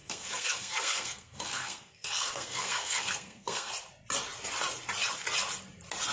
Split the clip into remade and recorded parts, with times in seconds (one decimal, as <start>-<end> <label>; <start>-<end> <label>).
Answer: 0.0-3.7 remade; 3.7-6.1 recorded

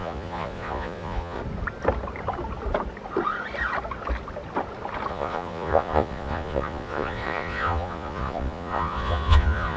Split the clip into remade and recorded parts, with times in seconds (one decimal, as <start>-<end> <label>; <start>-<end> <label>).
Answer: 0.0-1.4 remade; 1.4-5.1 recorded; 5.1-9.8 remade

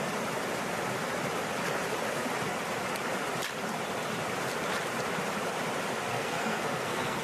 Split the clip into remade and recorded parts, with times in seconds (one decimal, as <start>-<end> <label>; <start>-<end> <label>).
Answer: 0.0-6.1 recorded; 6.1-7.2 remade

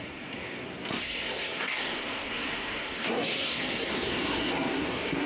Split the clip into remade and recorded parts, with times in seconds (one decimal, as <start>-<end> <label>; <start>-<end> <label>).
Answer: 0.0-5.3 remade

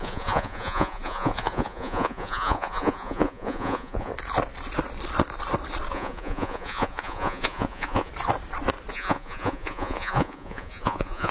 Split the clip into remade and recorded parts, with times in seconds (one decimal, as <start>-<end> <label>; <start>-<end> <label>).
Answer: 0.0-4.1 remade; 4.1-5.9 recorded; 5.9-8.1 remade; 8.1-8.9 recorded; 8.9-11.3 remade